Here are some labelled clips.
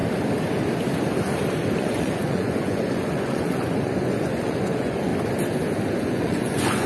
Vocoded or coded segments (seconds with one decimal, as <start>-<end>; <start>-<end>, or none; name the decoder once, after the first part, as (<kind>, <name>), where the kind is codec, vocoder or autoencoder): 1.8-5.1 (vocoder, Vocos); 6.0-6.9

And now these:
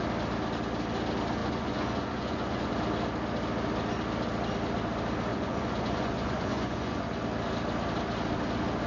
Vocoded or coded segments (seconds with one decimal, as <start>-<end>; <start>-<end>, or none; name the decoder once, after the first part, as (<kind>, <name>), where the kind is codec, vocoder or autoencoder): 1.4-2.7 (vocoder, Vocos); 5.3-7.0

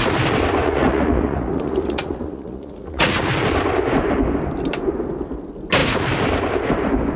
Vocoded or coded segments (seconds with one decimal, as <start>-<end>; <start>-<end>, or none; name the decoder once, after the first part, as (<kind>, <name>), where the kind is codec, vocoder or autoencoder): 0.6-3.2 (vocoder, Vocos)

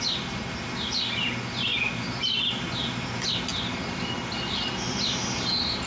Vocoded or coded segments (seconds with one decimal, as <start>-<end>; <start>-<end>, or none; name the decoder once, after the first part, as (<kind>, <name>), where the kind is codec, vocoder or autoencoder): none

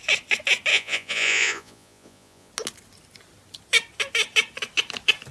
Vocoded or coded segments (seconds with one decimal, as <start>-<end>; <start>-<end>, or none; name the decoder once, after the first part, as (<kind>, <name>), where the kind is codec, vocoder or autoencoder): 0.7-2.5 (vocoder, Vocos)

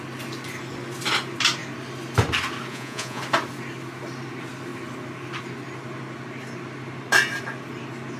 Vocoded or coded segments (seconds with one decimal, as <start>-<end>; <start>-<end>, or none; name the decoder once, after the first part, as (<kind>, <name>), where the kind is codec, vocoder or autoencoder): 2.7-3.2 (vocoder, Vocos)

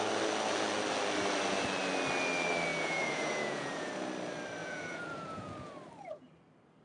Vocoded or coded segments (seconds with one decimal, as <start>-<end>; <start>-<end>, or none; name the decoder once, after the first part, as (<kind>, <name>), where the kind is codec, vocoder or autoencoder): 2.7-3.9 (vocoder, Vocos); 4.6-5.7

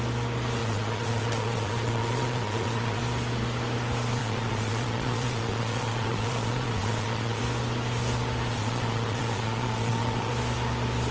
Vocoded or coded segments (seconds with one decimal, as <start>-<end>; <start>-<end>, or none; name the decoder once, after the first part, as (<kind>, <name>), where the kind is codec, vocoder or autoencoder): 0.6-3.0 (vocoder, Vocos); 4.2-7.4; 8.5-10.3